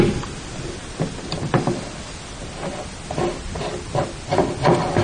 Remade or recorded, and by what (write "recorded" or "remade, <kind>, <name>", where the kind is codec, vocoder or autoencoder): recorded